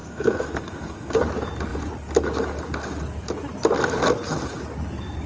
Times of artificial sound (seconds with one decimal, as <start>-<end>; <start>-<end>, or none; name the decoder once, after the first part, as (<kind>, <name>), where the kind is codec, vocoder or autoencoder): 0.0-1.2 (codec, SNAC)